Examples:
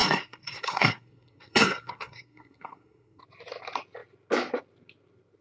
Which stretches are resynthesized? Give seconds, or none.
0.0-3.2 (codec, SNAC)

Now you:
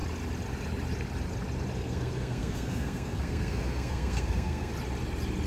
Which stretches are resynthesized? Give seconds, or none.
1.8-4.7 (codec, SNAC)

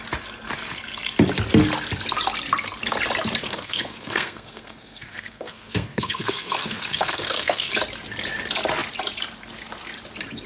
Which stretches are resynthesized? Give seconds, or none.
3.4-7.7 (codec, SNAC)